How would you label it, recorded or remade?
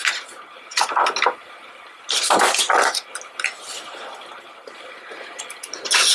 recorded